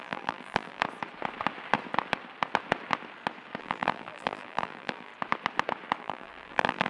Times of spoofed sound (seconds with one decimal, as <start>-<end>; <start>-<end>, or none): 0.0-0.8; 3.6-5.1; 6.0-6.9